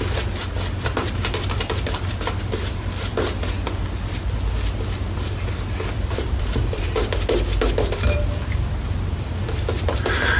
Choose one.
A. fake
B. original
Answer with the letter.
B